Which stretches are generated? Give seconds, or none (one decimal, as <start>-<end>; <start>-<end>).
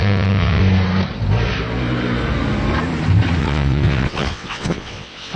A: 0.0-0.6; 3.4-5.4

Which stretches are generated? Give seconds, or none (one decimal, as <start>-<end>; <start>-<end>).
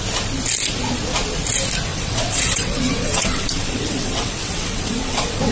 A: 1.9-5.5